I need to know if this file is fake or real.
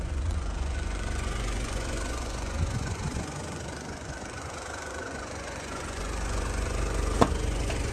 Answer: fake